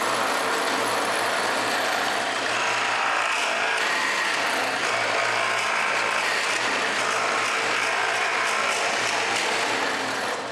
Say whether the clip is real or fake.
real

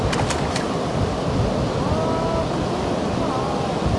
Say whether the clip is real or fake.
real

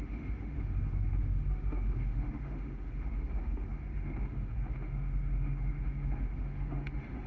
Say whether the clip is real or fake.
fake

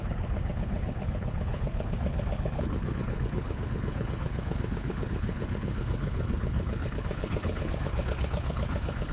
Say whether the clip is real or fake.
fake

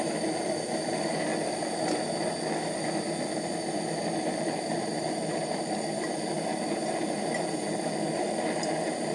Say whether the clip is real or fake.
real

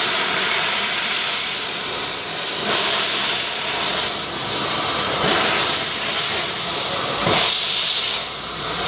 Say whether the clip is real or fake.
fake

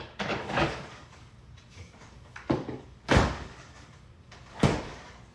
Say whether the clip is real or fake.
fake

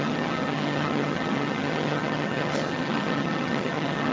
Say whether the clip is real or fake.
fake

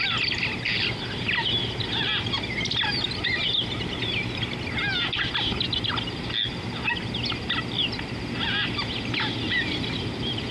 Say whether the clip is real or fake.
real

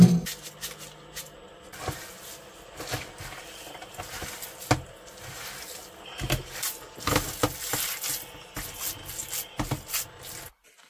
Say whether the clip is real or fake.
real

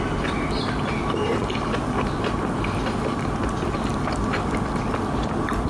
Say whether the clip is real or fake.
real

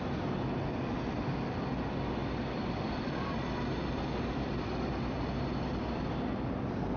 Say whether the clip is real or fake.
real